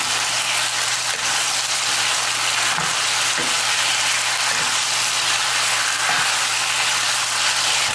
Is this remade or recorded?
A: recorded